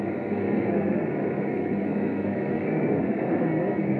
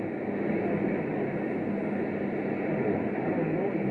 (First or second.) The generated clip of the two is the first